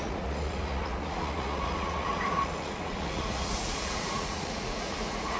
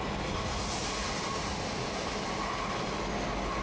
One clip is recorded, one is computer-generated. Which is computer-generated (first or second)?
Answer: first